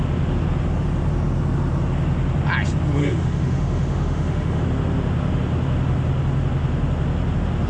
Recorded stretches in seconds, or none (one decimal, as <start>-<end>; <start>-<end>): 0.0-3.0; 4.6-7.7